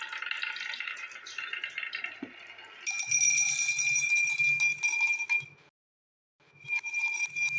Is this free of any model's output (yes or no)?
yes